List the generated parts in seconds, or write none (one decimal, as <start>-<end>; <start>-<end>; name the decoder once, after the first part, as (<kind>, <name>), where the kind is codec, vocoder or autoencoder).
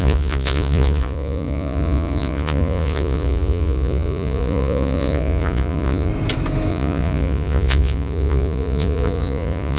0.0-6.1 (vocoder, Vocos); 6.7-9.8